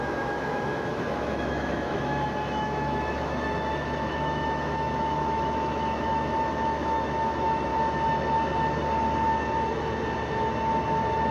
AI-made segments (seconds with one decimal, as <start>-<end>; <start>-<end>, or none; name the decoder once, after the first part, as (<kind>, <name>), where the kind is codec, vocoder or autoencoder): 0.0-7.7 (autoencoder, DAC-VAE)